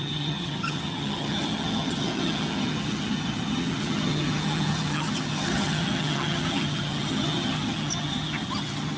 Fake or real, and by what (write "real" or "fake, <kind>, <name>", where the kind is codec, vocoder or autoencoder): fake, vocoder, HiFi-GAN